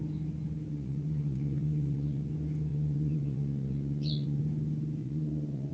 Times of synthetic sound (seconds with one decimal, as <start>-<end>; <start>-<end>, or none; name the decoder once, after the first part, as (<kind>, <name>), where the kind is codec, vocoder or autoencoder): 0.7-2.3 (vocoder, Vocos); 2.7-4.4; 5.0-5.7